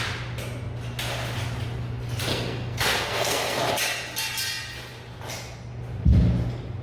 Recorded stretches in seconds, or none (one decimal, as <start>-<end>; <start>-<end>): 0.0-2.3; 3.7-6.8